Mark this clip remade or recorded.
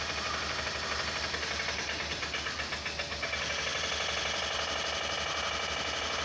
recorded